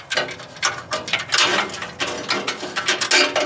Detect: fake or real real